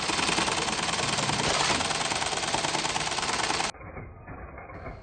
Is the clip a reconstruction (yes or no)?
no